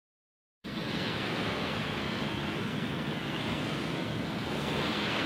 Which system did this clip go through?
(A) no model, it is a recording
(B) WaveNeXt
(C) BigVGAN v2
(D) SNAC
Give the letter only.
D